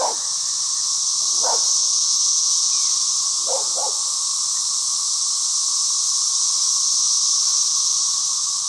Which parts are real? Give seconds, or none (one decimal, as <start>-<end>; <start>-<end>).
0.0-1.8; 2.8-8.7